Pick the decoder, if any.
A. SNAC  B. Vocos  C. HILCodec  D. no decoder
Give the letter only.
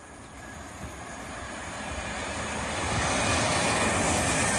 D